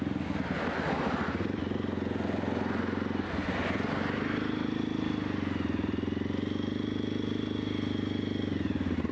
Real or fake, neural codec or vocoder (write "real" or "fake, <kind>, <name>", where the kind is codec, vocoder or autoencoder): real